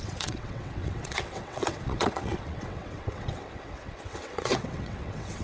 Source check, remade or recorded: remade